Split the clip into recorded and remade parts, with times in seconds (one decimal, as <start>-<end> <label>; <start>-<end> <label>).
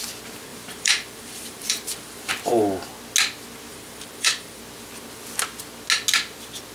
0.0-0.5 recorded; 0.5-2.3 remade; 2.3-3.7 recorded; 3.7-4.6 remade; 4.6-6.7 recorded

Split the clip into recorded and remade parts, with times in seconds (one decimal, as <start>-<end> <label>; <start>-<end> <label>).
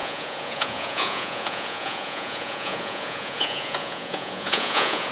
0.0-5.1 remade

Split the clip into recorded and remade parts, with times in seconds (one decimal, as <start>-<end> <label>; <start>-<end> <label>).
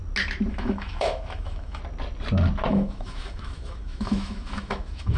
0.0-0.5 recorded; 0.5-1.8 remade; 1.8-2.7 recorded; 2.7-5.2 remade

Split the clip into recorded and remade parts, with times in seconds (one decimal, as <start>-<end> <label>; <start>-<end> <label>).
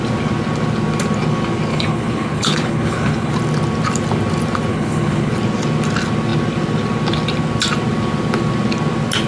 0.0-1.7 recorded; 1.7-3.3 remade; 3.3-4.7 recorded; 4.7-5.3 remade; 5.3-9.3 recorded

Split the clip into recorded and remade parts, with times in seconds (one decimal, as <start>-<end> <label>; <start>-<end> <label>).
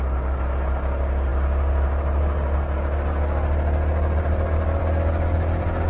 0.0-5.9 recorded